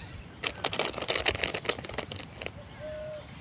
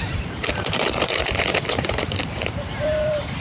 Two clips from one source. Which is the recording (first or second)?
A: first